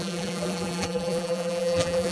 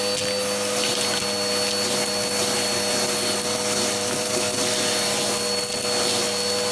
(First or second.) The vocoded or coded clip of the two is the first